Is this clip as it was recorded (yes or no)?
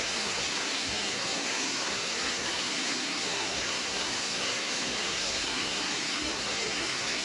no